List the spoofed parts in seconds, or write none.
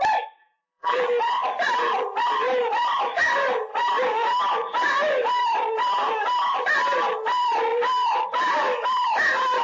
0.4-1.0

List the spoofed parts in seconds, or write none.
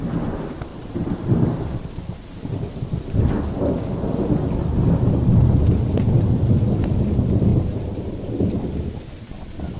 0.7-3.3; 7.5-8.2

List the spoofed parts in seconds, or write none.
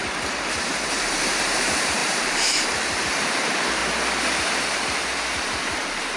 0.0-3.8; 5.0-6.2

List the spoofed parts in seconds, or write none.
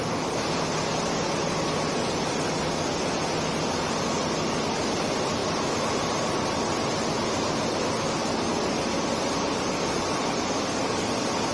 none